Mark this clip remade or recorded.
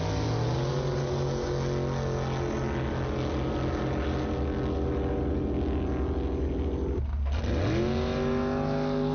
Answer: recorded